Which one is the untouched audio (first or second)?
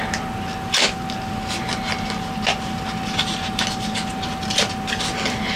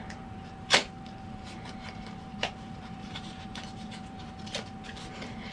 first